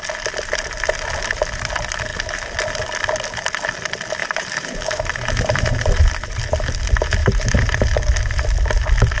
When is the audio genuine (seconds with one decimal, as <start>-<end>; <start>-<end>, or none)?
0.0-4.2; 6.0-7.2; 8.2-9.2